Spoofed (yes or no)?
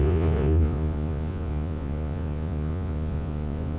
yes